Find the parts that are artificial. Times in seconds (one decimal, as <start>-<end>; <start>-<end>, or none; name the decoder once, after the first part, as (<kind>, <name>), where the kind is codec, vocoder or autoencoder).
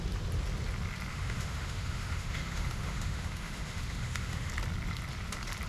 1.1-4.5 (autoencoder, DAC-VAE)